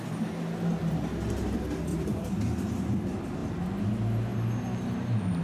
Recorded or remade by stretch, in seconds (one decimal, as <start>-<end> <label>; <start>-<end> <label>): 0.0-1.9 recorded; 1.9-3.0 remade; 3.0-5.4 recorded